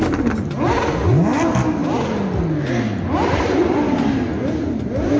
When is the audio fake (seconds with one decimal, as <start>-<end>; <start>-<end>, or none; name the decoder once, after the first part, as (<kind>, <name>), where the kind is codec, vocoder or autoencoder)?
none